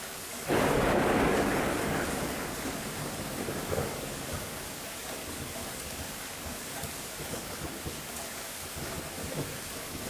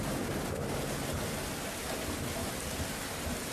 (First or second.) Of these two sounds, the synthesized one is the first